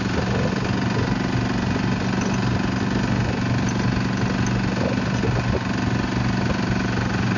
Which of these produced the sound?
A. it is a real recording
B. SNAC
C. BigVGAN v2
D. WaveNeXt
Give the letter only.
A